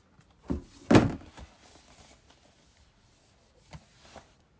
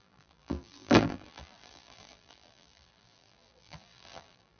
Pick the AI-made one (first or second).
second